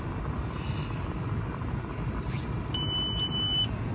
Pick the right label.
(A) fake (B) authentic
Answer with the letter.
B